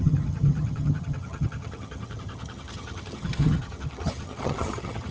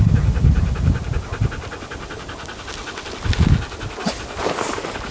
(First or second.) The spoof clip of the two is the first